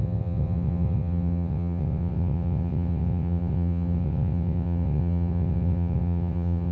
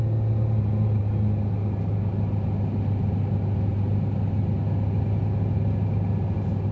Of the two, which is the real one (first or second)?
second